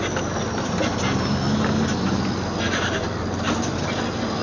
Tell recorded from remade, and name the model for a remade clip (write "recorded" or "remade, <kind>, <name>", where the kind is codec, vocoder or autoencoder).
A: recorded